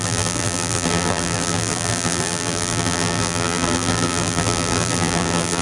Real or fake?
fake